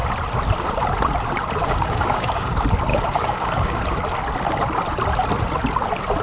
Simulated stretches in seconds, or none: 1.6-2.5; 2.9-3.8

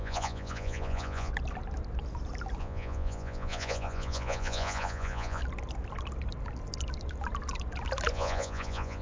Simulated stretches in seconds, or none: 0.0-1.3; 2.6-5.4; 8.1-9.0